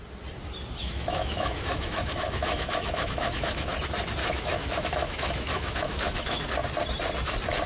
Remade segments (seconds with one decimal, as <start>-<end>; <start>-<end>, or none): 0.8-3.7; 4.2-6.4